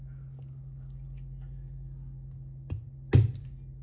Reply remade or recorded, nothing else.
recorded